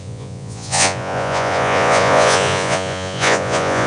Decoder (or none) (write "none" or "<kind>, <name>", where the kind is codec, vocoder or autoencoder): vocoder, Vocos